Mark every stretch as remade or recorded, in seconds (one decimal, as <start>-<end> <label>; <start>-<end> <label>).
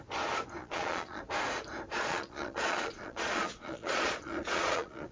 0.0-0.6 recorded; 0.6-1.2 remade; 1.2-1.9 recorded; 1.9-5.1 remade